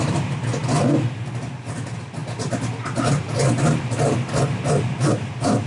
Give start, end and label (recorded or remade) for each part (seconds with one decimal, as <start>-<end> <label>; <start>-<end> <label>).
0.0-5.7 recorded